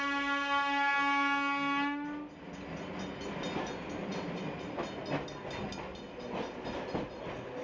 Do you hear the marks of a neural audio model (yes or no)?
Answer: no